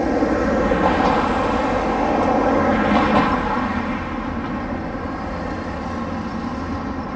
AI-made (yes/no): no